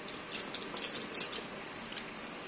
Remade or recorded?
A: recorded